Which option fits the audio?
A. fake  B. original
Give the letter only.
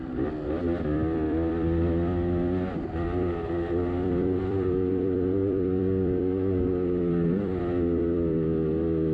A